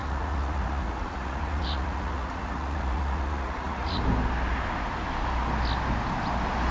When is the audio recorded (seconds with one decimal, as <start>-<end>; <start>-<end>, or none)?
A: 4.0-6.7